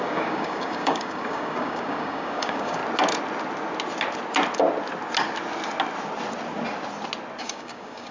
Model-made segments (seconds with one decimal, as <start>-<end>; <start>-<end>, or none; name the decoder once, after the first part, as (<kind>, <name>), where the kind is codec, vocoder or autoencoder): 0.0-2.8 (codec, DAC); 7.4-8.1